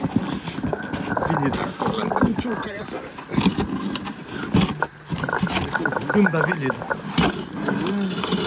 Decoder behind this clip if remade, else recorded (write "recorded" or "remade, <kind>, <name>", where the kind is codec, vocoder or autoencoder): recorded